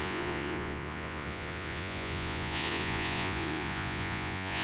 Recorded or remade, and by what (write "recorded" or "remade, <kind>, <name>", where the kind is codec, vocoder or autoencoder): remade, vocoder, Vocos